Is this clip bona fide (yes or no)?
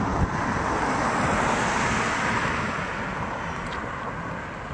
yes